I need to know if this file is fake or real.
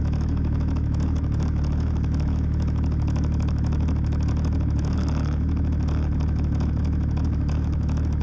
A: fake